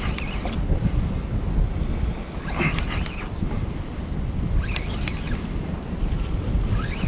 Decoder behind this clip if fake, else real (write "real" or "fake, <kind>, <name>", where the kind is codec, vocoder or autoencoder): real